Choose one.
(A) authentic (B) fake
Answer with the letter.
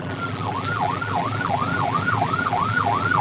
B